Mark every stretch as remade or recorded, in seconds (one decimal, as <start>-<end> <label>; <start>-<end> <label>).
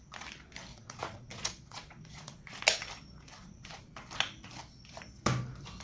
0.0-0.7 recorded; 0.7-2.5 remade; 2.5-3.4 recorded; 3.4-3.9 remade; 3.9-5.8 recorded